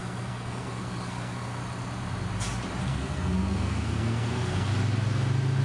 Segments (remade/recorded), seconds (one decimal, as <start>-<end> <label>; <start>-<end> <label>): 0.0-1.6 remade; 1.6-2.8 recorded; 2.8-4.7 remade; 4.7-5.6 recorded